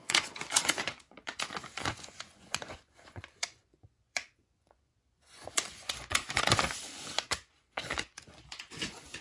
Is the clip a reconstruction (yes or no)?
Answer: yes